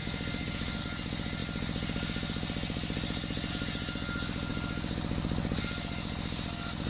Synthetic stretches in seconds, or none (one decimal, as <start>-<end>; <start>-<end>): 0.0-0.8